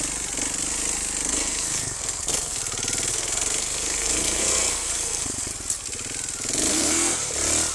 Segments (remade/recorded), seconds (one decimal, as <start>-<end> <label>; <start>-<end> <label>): 0.0-1.3 recorded; 1.3-2.6 remade; 2.6-3.1 recorded; 3.1-5.5 remade; 5.5-6.7 recorded; 6.7-7.3 remade; 7.3-7.7 recorded